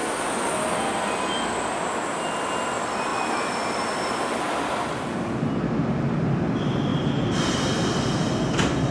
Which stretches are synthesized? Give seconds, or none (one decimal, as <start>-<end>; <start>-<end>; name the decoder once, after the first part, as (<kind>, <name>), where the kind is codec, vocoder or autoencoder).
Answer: none